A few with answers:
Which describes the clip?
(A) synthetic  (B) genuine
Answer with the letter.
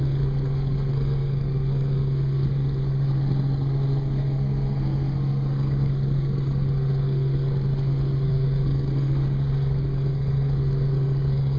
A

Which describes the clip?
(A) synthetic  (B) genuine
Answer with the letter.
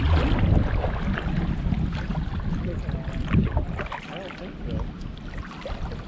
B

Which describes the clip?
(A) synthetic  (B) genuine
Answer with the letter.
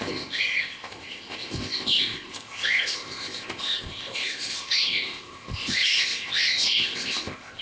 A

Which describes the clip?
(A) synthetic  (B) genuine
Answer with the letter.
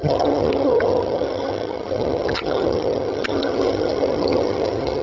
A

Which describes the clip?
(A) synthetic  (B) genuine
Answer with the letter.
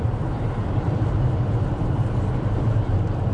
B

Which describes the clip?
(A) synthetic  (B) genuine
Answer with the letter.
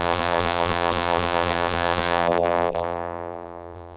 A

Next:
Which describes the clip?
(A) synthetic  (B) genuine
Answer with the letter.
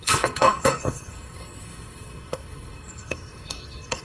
A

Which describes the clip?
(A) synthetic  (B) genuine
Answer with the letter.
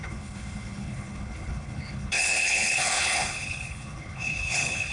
A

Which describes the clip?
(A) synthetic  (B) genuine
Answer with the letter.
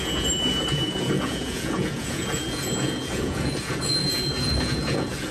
A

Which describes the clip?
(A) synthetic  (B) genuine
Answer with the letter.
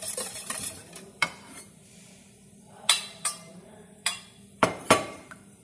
A